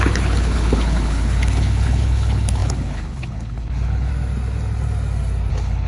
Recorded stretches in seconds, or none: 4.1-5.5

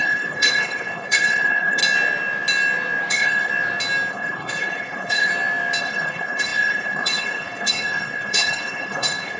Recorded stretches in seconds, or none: 1.8-3.1; 3.5-4.1; 5.3-5.8

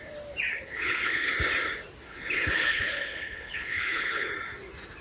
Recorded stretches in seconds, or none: 0.0-0.5; 1.3-2.1; 4.3-5.0

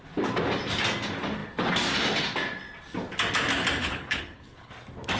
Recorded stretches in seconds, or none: 0.0-3.8; 4.7-5.2

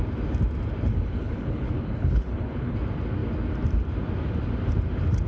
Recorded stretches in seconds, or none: 0.0-0.9; 2.8-5.3

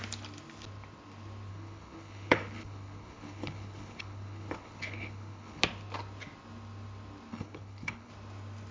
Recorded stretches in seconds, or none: 0.0-1.5; 5.6-7.3; 8.1-8.7